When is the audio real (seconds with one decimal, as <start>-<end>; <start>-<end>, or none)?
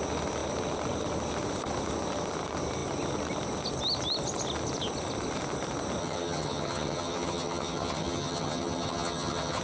0.0-6.0